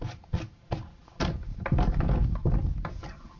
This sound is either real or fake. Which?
real